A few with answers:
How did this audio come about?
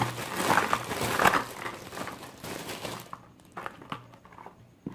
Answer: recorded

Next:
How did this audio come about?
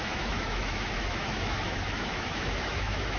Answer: remade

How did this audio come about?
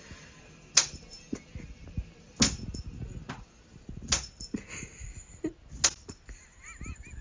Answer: recorded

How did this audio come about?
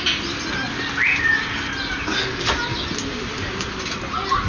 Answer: recorded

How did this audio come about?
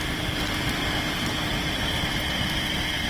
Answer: recorded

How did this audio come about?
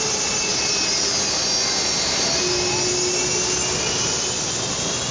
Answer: recorded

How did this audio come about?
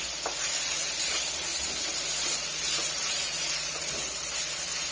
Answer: recorded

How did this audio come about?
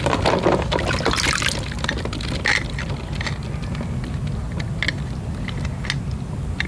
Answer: recorded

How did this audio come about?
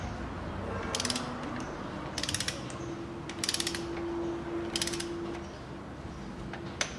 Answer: recorded